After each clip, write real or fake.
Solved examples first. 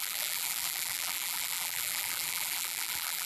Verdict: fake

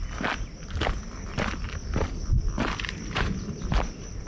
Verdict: real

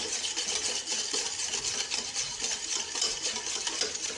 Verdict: real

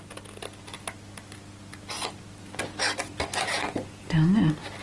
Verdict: real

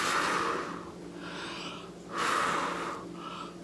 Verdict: real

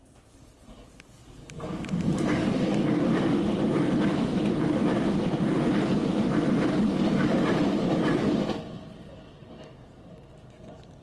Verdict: fake